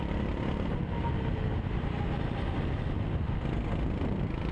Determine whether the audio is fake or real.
real